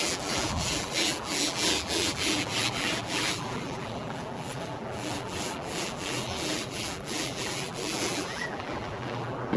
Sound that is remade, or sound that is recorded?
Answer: remade